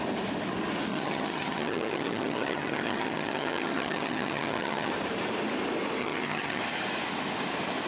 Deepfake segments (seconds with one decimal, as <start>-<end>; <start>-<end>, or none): 0.9-4.9; 6.0-6.6